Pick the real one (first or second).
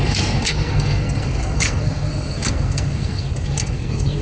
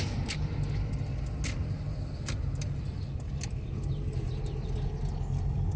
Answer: second